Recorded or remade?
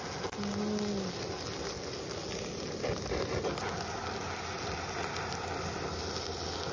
recorded